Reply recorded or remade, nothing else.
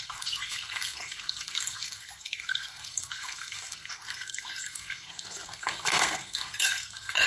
remade